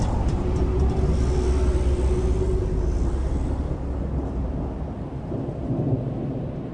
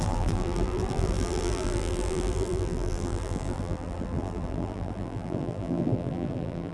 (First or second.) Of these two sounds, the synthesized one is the second